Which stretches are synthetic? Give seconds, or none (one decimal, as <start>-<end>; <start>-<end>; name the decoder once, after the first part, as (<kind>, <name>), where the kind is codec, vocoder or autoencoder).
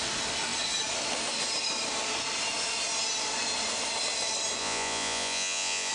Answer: 4.6-5.9 (vocoder, Vocos)